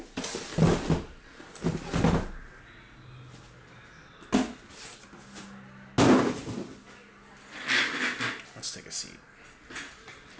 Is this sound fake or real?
real